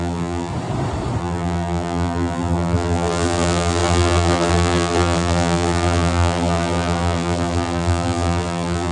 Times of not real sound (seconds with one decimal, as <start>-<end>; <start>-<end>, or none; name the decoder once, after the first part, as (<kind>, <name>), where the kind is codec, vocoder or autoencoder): 0.0-0.5 (vocoder, BigVGAN v2); 1.2-8.9